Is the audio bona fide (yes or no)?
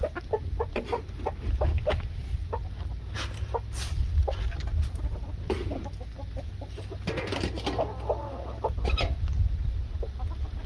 yes